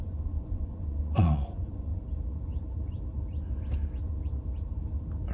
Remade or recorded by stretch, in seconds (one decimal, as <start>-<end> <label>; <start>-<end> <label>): 0.0-1.9 remade; 1.9-5.3 recorded